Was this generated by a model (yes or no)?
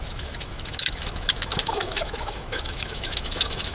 yes